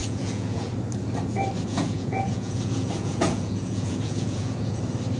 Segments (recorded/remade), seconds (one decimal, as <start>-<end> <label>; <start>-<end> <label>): 0.0-0.7 remade; 0.7-1.7 recorded; 1.7-4.8 remade; 4.8-5.2 recorded